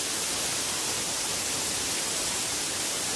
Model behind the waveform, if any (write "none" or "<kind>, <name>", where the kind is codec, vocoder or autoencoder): none